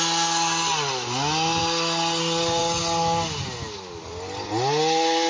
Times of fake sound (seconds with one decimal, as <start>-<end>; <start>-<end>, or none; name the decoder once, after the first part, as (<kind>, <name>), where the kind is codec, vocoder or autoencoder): none